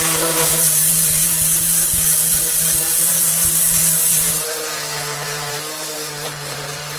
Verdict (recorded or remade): remade